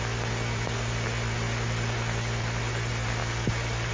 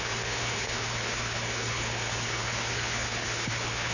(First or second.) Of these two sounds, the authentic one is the first